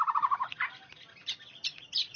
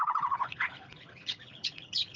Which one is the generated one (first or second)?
second